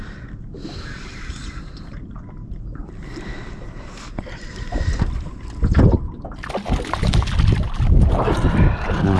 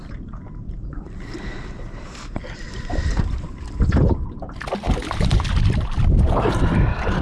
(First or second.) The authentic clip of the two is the first